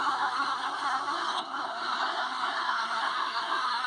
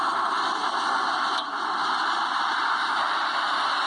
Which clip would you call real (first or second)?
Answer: second